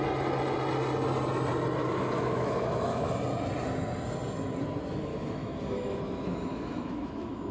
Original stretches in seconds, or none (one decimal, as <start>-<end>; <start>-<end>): 0.0-1.8; 3.1-5.1